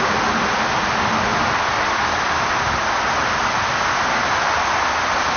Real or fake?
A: real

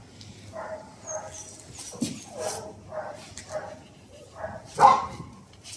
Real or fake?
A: real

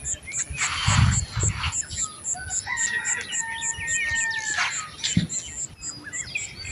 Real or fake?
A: real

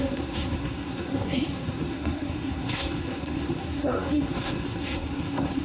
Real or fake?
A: fake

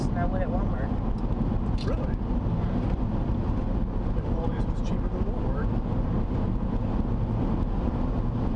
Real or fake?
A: real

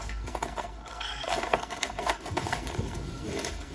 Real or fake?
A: fake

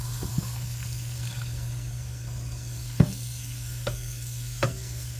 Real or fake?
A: fake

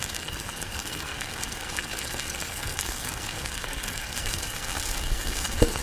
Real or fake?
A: fake